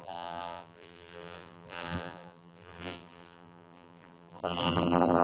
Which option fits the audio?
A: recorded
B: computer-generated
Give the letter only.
B